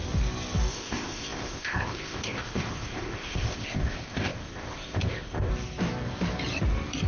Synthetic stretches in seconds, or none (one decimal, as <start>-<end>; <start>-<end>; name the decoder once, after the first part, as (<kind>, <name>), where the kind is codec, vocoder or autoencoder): 0.7-5.5 (codec, ZipCodec)